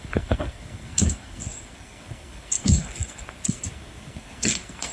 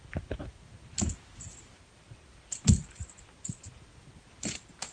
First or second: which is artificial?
first